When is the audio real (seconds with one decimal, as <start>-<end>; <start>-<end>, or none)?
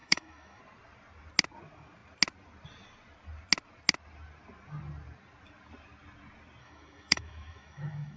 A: 0.6-6.6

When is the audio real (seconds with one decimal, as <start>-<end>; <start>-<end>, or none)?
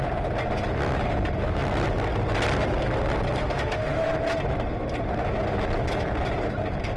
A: 0.0-3.4; 4.1-7.0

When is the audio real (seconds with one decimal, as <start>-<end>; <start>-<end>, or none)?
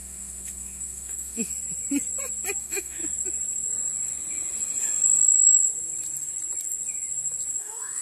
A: 1.5-2.6; 3.0-7.6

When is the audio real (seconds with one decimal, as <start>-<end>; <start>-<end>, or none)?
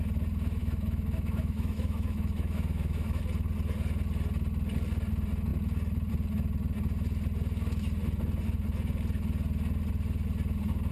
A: 0.0-0.6; 3.2-10.9